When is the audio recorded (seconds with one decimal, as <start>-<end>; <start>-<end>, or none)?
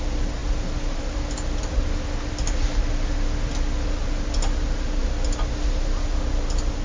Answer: 0.0-6.8